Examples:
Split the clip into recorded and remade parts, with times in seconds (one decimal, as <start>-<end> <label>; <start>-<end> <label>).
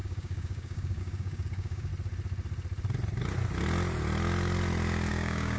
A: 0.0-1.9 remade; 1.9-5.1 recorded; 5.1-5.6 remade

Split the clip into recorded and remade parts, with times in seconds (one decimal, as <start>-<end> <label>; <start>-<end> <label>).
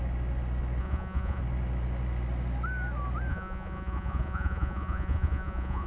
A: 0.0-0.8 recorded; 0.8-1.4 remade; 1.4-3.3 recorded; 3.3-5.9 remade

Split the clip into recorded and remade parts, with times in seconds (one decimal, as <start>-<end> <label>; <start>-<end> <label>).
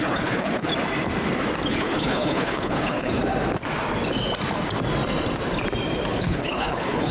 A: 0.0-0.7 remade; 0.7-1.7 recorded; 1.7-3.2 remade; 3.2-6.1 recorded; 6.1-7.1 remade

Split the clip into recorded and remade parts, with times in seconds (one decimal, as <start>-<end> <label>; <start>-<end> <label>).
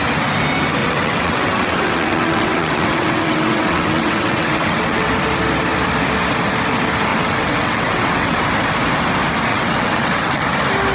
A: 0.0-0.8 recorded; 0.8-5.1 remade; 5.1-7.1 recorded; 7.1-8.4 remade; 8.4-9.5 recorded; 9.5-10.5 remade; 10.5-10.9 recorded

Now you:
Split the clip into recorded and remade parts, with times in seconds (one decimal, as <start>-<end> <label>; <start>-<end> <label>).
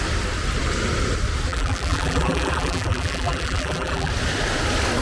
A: 0.0-1.5 recorded; 1.5-4.1 remade; 4.1-5.0 recorded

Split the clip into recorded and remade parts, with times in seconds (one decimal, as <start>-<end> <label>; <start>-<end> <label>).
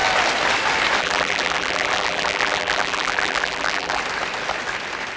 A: 0.0-1.0 recorded; 1.0-4.0 remade; 4.0-5.2 recorded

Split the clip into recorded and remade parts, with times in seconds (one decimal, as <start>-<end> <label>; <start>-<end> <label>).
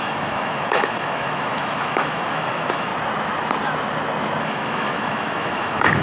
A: 0.0-2.9 remade; 2.9-4.4 recorded; 4.4-6.0 remade